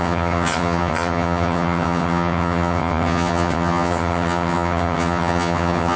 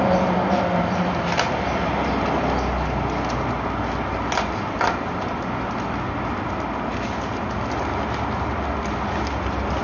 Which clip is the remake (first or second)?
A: first